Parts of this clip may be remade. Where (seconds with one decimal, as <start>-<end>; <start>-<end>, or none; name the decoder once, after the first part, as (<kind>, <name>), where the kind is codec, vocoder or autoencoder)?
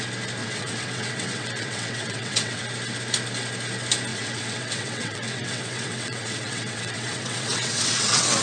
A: 0.4-2.6 (vocoder, WaveNeXt); 4.1-8.4